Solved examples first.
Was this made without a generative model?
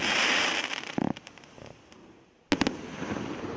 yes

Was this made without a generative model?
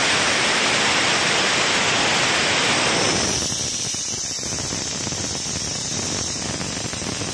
yes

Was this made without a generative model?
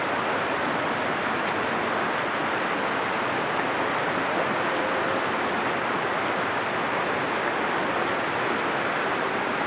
yes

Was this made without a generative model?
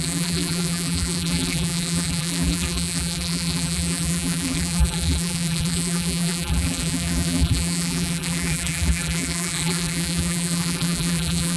no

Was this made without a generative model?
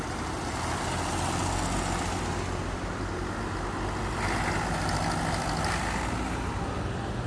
yes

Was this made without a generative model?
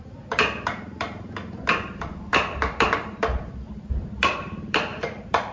no